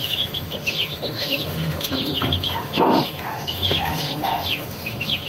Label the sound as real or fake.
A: fake